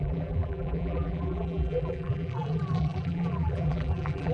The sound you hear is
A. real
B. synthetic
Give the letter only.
B